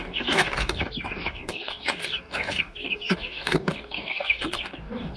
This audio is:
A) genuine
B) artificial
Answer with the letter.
B